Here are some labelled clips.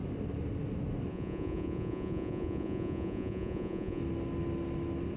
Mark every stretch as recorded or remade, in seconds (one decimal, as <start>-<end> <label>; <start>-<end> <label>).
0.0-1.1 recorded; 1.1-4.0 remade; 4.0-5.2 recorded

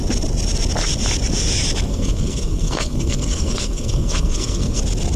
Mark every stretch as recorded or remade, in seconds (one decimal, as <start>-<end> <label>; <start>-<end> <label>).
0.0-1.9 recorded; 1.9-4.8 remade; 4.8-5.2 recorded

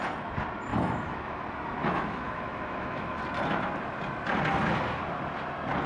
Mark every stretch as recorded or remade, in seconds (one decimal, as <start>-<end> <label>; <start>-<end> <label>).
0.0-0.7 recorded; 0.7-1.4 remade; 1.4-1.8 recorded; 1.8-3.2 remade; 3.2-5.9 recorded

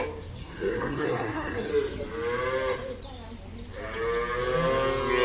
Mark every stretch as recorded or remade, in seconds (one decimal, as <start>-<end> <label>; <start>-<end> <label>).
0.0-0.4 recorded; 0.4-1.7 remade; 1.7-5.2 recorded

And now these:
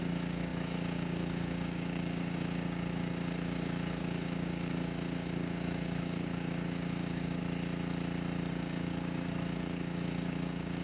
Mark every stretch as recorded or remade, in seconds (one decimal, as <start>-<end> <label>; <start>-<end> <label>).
0.0-7.4 remade; 7.4-8.5 recorded; 8.5-10.8 remade

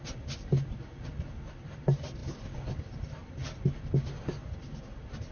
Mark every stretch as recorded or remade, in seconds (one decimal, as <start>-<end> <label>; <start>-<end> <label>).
0.0-5.3 recorded

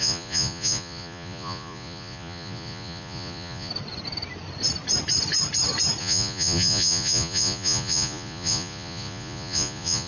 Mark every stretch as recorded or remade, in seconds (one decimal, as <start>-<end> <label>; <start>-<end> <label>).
0.0-3.7 remade; 3.7-6.0 recorded; 6.0-10.1 remade

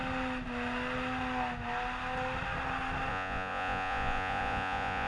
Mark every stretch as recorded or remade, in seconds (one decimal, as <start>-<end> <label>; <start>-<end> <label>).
0.0-3.1 recorded; 3.1-5.1 remade